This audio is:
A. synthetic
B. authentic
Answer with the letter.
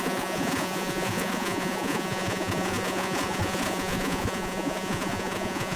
A